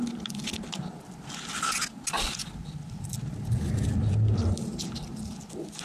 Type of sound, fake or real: real